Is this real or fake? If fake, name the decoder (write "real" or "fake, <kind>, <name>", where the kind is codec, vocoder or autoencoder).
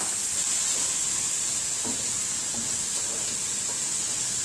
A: real